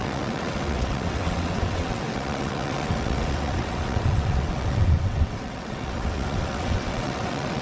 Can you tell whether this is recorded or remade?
remade